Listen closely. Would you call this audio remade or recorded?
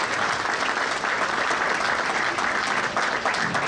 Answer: recorded